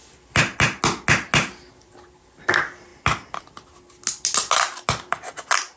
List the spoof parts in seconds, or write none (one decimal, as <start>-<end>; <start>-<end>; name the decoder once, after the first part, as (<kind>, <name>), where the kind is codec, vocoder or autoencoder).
none